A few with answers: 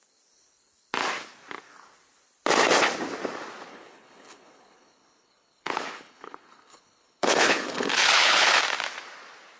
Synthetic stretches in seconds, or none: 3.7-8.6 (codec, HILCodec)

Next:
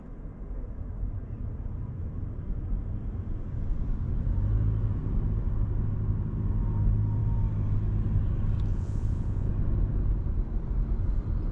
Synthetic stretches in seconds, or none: 8.7-9.5 (vocoder, Vocos)

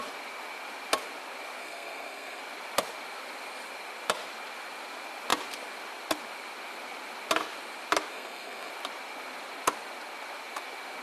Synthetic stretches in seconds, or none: 1.6-2.4 (codec, SNAC); 8.1-8.7

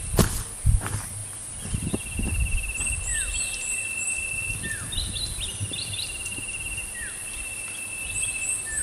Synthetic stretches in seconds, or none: none

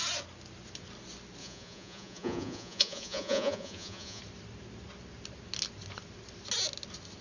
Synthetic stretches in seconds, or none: 1.4-4.2 (vocoder, Vocos)

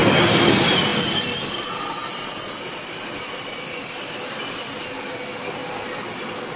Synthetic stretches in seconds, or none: 0.0-0.5 (vocoder, BigVGAN v2); 0.9-4.9

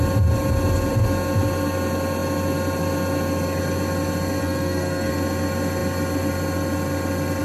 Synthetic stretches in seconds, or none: 4.4-5.1 (codec, SNAC)

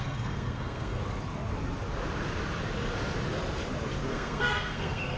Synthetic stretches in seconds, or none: 0.0-1.0 (codec, SNAC); 4.1-5.2